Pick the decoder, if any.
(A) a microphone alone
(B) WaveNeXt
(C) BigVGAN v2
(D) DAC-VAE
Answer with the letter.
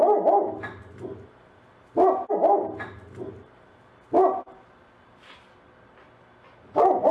A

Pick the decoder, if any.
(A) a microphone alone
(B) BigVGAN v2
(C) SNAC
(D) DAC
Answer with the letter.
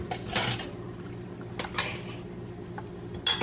A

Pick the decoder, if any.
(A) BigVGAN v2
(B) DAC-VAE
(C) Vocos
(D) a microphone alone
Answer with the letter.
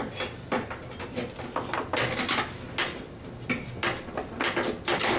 D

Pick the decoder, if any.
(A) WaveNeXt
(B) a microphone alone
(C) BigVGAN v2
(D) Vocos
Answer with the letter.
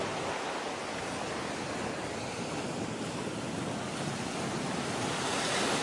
B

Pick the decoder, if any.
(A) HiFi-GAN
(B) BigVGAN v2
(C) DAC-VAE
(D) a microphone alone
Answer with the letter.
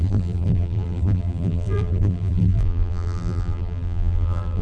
B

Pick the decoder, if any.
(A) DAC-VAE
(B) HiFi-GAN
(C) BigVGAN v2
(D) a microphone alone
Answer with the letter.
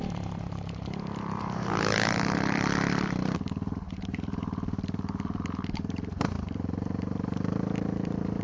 C